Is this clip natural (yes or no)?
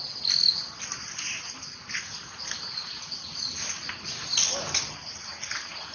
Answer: yes